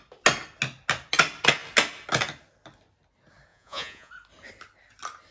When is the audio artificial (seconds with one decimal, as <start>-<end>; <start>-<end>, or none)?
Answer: 3.5-4.1